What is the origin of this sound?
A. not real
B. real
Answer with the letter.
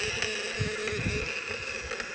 B